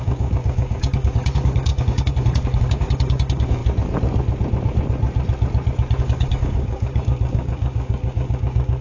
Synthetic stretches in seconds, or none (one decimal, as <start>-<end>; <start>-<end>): 0.0-3.6; 6.0-8.8